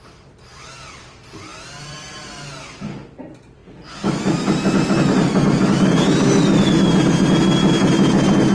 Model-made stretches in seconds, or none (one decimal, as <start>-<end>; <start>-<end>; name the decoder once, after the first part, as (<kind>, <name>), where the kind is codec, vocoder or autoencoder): none